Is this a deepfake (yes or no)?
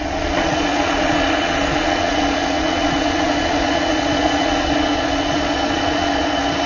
yes